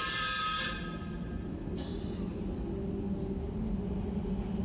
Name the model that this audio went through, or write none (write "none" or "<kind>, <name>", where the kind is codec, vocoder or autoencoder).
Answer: none